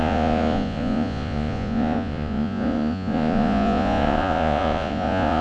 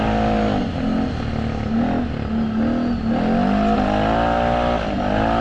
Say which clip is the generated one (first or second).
first